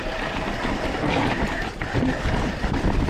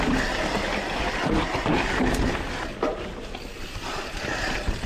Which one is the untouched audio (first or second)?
second